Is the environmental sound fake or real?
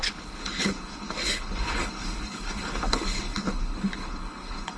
fake